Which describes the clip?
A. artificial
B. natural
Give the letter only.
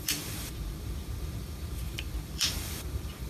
A